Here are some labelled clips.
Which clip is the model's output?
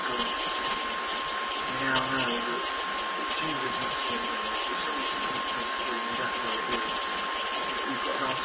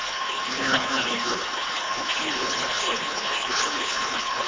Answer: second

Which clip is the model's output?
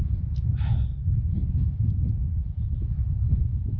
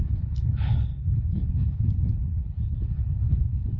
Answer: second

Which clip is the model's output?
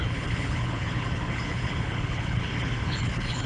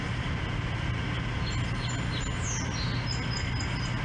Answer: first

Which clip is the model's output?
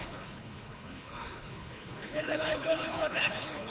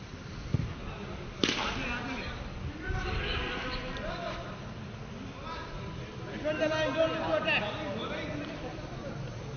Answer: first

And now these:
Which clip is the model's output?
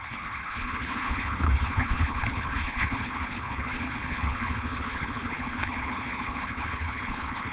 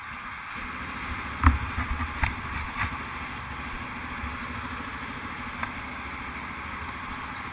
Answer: first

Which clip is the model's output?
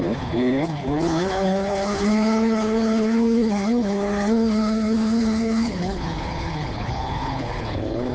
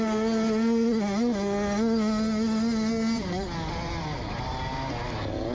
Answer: first